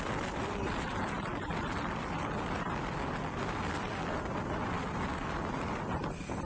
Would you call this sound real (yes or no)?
yes